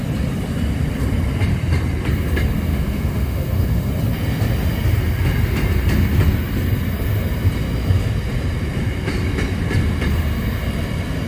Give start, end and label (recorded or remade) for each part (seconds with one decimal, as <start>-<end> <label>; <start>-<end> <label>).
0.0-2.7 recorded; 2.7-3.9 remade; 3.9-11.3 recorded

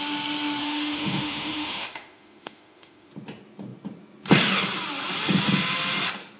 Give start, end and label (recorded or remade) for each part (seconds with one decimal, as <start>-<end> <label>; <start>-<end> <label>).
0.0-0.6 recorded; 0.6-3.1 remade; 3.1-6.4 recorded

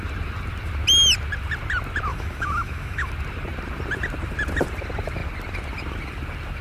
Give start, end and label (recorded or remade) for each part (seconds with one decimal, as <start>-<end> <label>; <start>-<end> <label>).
0.0-2.1 recorded; 2.1-3.1 remade; 3.1-6.6 recorded

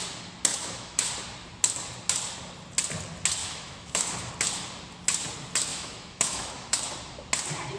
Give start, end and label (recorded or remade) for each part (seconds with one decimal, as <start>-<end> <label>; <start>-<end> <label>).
0.0-0.5 recorded; 0.5-1.1 remade; 1.1-3.4 recorded; 3.4-4.3 remade; 4.3-5.7 recorded; 5.7-6.8 remade; 6.8-7.8 recorded

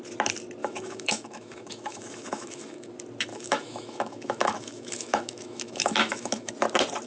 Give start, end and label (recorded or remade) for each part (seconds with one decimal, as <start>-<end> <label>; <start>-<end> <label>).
0.0-0.6 recorded; 0.6-2.9 remade; 2.9-3.3 recorded; 3.3-6.5 remade; 6.5-7.1 recorded